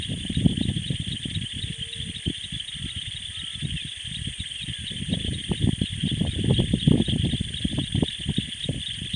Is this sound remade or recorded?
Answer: recorded